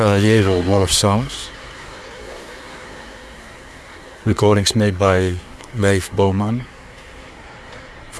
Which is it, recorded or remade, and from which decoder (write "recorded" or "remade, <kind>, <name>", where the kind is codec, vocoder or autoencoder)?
remade, codec, SNAC